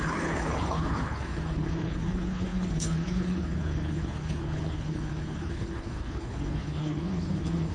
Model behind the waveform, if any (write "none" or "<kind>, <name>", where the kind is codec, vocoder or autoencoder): codec, HILCodec